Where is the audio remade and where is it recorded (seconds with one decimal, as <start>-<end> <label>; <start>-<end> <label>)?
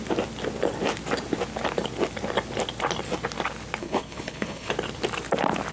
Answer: 0.0-3.8 recorded; 3.8-4.7 remade; 4.7-5.7 recorded